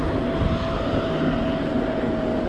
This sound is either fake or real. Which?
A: real